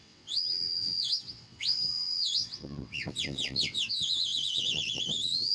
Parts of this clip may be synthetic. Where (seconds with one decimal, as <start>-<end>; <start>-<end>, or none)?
0.0-5.5